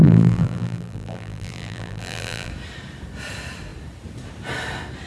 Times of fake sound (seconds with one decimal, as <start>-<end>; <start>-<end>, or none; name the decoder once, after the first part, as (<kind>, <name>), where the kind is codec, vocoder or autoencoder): 0.0-2.5 (vocoder, BigVGAN v2)